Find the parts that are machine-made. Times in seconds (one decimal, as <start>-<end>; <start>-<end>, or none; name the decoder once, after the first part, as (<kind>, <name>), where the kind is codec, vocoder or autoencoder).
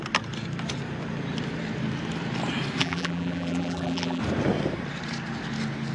2.8-4.2 (vocoder, BigVGAN v2)